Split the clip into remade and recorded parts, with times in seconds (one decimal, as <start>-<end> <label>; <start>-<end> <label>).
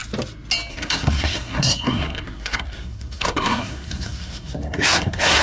0.0-0.7 recorded; 0.7-5.4 remade